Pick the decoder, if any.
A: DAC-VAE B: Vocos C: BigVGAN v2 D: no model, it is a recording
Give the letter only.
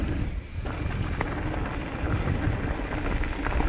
D